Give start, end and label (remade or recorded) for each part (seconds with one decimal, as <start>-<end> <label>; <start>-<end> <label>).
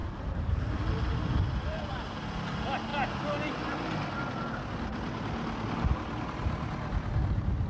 0.0-0.9 remade; 0.9-7.7 recorded